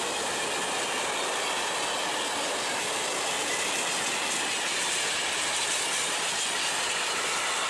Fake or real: real